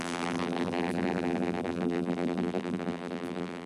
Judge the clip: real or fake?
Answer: fake